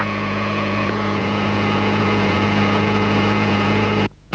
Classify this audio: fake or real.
fake